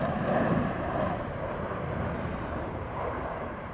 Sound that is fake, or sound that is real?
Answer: fake